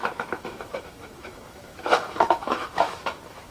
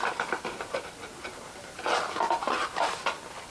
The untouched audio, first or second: second